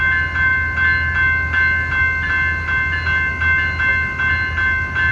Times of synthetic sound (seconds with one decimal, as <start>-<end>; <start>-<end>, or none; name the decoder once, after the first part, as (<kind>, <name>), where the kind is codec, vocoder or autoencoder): none